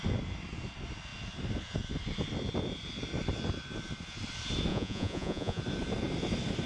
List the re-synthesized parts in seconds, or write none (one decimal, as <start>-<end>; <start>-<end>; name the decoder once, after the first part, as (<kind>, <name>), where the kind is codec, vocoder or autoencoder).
4.7-5.6 (vocoder, Vocos)

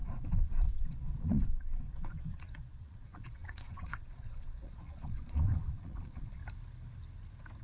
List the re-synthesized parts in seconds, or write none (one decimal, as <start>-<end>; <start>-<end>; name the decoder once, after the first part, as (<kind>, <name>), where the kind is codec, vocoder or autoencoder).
0.0-6.4 (vocoder, Vocos)

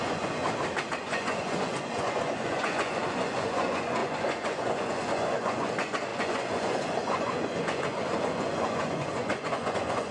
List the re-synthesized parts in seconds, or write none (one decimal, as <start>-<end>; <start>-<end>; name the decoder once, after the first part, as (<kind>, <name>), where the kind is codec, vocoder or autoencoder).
0.0-0.4 (vocoder, Vocos); 1.0-10.1

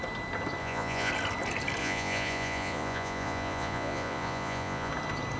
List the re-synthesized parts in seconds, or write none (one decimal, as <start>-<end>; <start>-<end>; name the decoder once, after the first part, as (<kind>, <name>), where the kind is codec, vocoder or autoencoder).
0.6-1.1 (vocoder, Vocos); 1.8-4.9